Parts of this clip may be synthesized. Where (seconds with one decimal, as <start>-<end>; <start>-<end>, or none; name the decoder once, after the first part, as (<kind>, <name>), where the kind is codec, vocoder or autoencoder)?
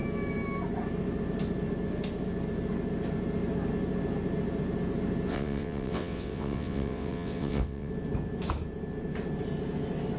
5.3-7.9 (vocoder, WaveNeXt)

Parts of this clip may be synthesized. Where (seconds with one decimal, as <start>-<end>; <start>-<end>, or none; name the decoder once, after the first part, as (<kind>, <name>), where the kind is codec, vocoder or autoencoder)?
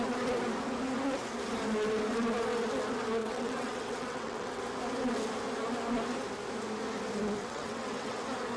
3.2-4.6 (vocoder, WaveNeXt); 7.4-8.2